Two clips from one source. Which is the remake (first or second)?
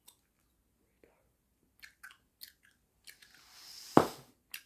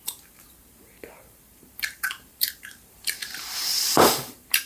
second